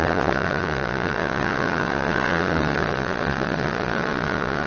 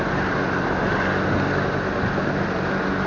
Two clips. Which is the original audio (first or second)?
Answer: second